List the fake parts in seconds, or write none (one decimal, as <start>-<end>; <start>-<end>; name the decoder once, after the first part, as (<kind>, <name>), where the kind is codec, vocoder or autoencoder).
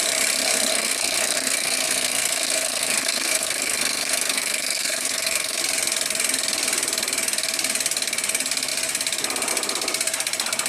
0.7-5.6 (codec, SNAC)